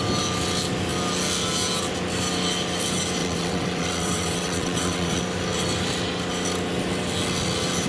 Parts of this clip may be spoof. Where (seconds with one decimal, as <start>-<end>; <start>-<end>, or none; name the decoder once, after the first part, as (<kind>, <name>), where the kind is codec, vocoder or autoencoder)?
3.2-5.2 (vocoder, WaveNeXt)